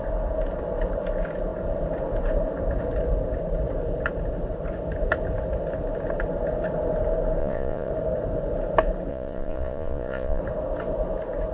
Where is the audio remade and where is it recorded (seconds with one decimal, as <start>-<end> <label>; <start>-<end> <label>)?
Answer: 0.0-7.4 recorded; 7.4-7.9 remade; 7.9-9.1 recorded; 9.1-10.4 remade; 10.4-11.5 recorded